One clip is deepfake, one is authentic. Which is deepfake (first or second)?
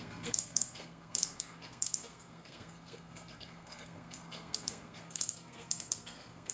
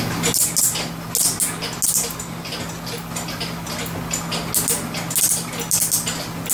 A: first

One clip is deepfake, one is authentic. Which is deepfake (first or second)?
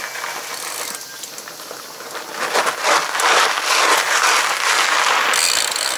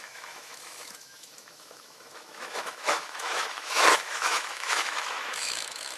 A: second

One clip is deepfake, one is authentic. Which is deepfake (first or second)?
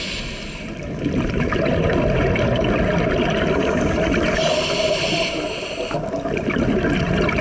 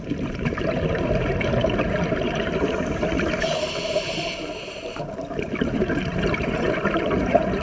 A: second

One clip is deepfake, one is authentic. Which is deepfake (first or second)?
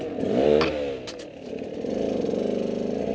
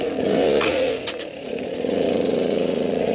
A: second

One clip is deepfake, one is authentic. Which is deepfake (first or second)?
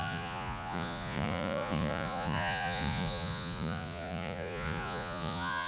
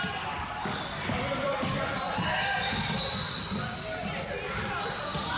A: first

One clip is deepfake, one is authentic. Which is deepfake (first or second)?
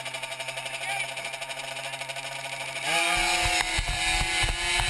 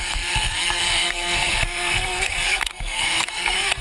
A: second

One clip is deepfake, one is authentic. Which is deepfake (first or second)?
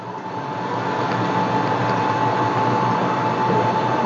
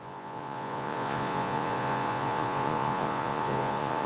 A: second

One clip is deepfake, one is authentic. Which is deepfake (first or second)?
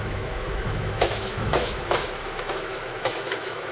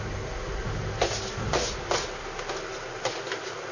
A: first